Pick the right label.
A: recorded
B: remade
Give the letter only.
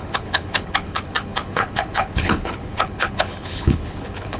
B